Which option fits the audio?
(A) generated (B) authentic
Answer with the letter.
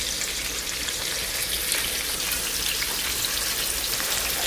B